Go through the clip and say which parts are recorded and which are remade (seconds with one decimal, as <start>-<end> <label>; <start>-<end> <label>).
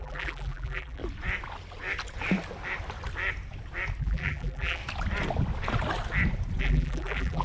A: 0.0-1.0 remade; 1.0-4.0 recorded; 4.0-4.8 remade; 4.8-6.6 recorded; 6.6-7.4 remade